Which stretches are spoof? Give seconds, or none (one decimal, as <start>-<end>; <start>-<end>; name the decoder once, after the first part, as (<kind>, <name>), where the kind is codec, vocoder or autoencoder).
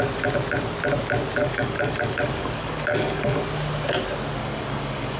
1.4-3.4 (codec, DAC); 4.4-5.2